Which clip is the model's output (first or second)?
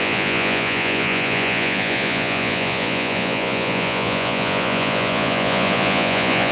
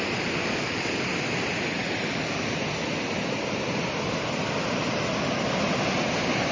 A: first